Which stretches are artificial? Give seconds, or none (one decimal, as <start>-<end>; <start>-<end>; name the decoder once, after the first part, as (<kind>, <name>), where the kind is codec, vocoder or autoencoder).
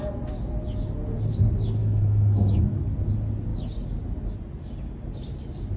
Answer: 1.8-2.6 (autoencoder, DAC-VAE)